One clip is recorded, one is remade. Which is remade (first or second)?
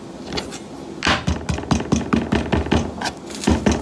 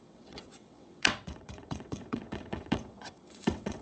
second